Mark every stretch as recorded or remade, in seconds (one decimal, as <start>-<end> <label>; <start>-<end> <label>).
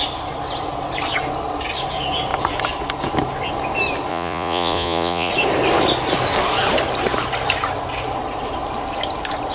0.0-4.1 recorded; 4.1-5.3 remade; 5.3-9.5 recorded